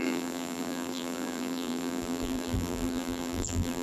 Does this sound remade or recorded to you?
remade